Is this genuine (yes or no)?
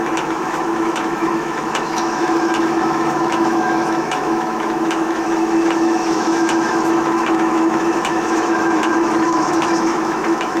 no